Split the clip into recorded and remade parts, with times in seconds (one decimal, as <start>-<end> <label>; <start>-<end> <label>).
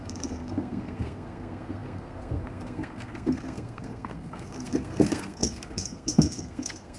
0.0-7.0 remade